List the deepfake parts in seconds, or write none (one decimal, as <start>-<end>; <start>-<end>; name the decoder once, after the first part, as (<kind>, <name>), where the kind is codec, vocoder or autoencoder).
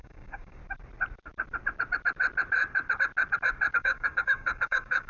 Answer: 0.0-0.6 (codec, DAC); 3.7-5.1